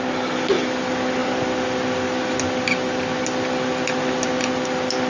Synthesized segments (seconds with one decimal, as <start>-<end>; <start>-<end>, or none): none